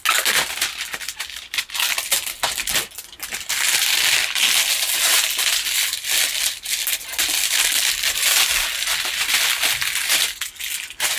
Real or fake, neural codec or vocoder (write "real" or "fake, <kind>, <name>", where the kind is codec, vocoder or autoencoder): real